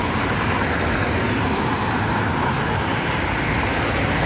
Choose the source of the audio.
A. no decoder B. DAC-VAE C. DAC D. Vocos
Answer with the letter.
A